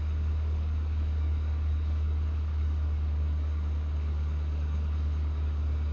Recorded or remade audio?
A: remade